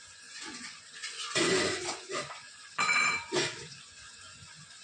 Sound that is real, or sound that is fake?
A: fake